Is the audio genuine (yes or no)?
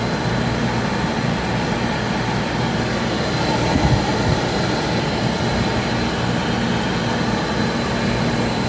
yes